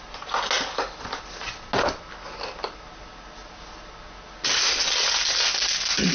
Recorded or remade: recorded